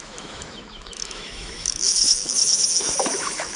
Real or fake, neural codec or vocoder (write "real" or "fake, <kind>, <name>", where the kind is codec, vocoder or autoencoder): fake, autoencoder, DAC-VAE